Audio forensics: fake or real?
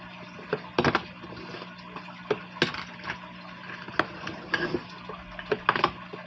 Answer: real